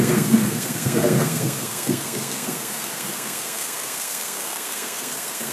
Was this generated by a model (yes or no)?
yes